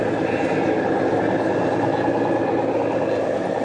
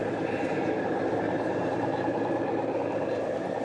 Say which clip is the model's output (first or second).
second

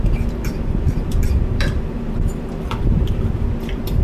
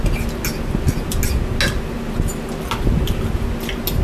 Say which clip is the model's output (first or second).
first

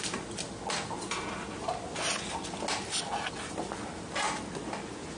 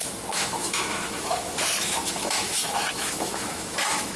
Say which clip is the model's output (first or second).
second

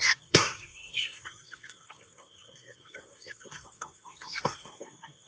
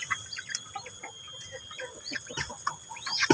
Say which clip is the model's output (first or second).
first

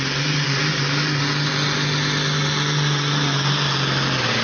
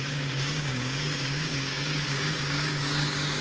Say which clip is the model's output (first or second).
second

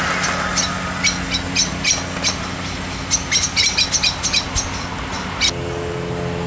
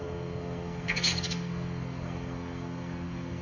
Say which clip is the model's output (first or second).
second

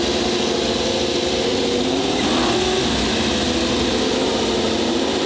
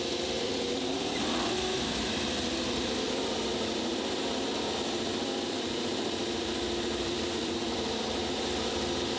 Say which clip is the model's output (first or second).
second